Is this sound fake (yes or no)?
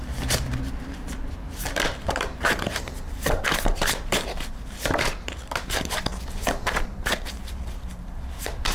yes